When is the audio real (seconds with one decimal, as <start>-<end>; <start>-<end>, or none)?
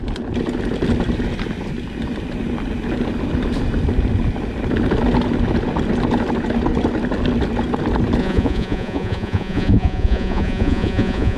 0.0-8.2